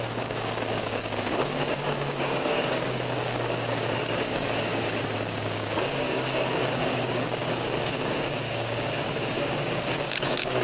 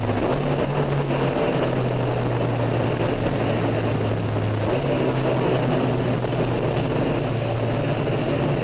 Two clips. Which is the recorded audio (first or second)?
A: second